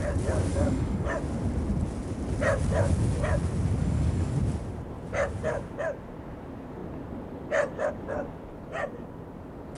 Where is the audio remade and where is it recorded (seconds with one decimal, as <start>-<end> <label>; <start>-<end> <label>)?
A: 0.0-0.5 recorded; 0.5-1.2 remade; 1.2-3.8 recorded; 3.8-4.4 remade; 4.4-9.8 recorded